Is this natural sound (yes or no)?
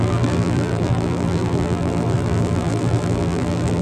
no